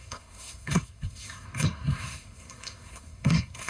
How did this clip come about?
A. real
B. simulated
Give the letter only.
B